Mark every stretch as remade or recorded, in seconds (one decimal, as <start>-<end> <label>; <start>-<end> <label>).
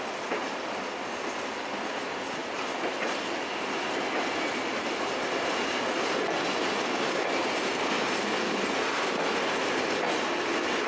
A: 0.0-2.4 recorded; 2.4-3.0 remade; 3.0-10.9 recorded